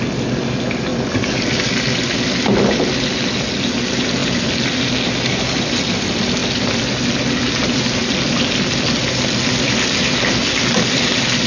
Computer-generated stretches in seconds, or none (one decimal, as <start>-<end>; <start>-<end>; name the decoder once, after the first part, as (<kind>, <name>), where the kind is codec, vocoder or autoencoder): none